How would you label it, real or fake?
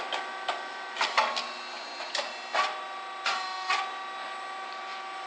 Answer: real